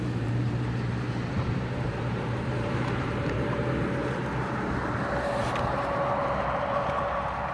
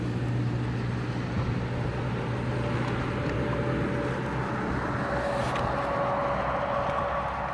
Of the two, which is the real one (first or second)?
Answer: second